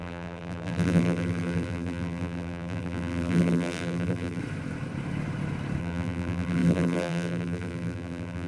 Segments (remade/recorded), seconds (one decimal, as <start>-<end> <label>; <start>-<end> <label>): 0.0-4.4 remade; 4.4-5.8 recorded; 5.8-8.5 remade